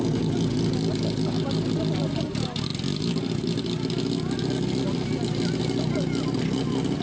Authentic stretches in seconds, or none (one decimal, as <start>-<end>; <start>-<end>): 0.0-7.0